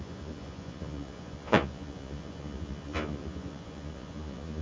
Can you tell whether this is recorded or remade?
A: remade